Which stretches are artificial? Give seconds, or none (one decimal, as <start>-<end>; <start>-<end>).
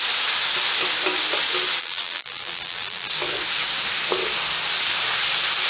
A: 1.8-3.1